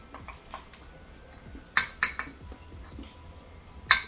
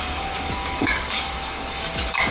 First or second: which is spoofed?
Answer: second